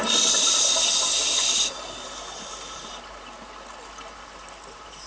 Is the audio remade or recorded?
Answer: recorded